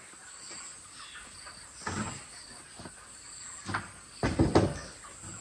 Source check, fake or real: real